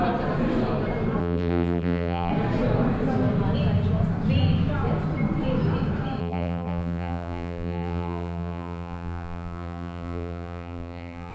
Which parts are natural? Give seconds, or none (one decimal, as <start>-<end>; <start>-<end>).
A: 0.0-1.2; 2.3-6.2